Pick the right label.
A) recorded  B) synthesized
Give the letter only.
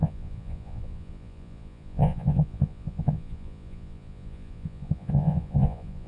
B